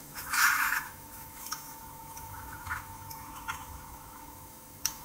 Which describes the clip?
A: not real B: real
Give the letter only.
A